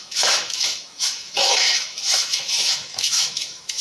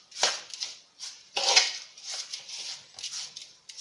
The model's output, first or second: first